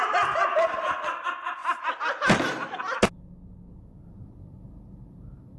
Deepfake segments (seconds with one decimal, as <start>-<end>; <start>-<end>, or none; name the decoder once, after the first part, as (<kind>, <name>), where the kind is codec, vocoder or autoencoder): none